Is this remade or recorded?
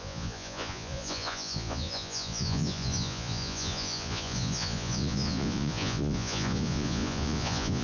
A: remade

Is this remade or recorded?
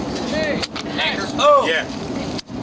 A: recorded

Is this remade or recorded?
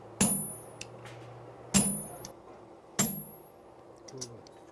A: recorded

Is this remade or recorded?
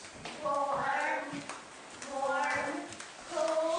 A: recorded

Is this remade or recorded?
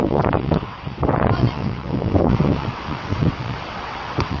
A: remade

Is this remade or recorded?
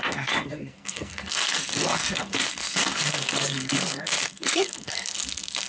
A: remade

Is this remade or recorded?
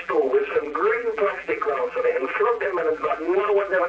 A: remade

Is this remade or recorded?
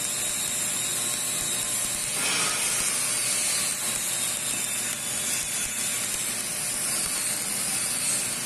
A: recorded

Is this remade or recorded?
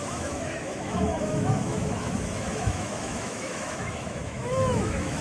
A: remade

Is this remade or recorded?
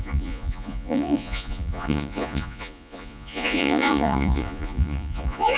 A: remade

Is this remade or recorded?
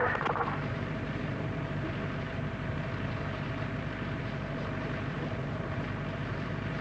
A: remade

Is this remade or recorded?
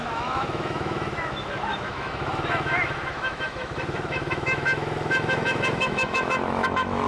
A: remade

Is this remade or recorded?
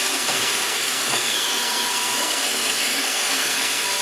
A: remade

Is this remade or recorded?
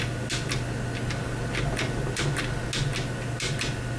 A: recorded